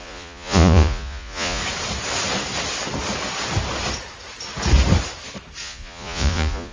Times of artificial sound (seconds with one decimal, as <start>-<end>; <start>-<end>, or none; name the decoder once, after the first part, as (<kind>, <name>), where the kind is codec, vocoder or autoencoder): 0.0-1.6 (vocoder, Vocos); 5.6-6.7